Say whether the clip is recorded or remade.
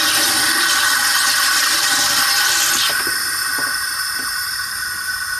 remade